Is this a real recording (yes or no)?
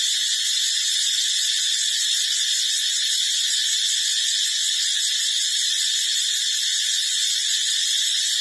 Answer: no